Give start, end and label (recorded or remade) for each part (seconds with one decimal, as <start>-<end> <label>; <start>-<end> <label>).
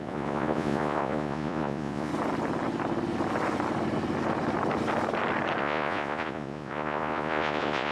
0.0-2.1 remade; 2.1-5.6 recorded; 5.6-7.9 remade